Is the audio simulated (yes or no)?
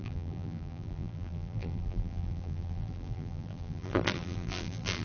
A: yes